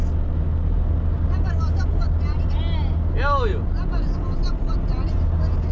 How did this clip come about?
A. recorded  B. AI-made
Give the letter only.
A